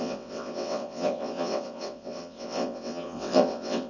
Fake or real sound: fake